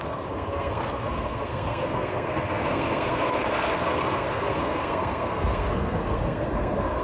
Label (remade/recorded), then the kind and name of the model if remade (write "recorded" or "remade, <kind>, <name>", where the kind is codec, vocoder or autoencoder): remade, codec, SNAC